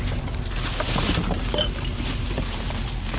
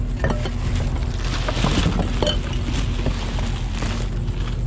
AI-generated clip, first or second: first